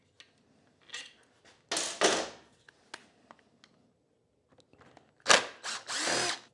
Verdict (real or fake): real